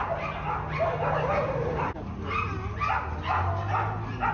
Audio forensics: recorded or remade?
recorded